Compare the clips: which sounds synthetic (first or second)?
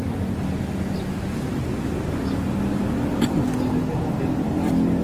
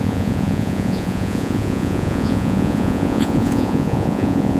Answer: second